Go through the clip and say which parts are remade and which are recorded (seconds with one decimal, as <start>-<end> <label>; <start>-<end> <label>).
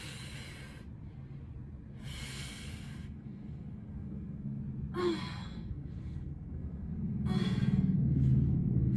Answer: 0.0-2.3 recorded; 2.3-4.6 remade; 4.6-5.0 recorded; 5.0-9.0 remade